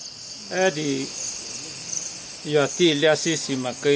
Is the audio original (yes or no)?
yes